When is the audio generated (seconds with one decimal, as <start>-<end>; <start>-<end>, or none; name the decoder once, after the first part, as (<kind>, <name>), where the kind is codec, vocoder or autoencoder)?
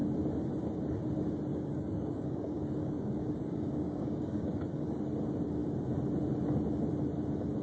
1.5-5.0 (codec, DAC)